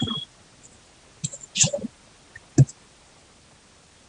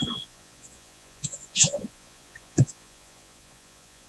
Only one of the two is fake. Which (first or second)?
second